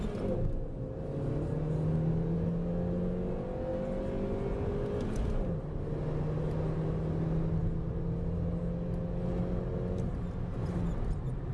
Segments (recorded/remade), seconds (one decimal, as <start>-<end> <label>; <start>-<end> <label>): 0.0-11.5 recorded